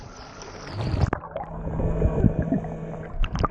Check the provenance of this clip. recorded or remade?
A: recorded